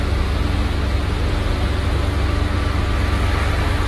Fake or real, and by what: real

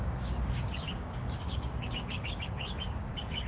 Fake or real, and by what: fake, codec, DAC